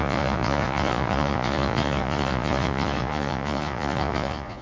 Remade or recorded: remade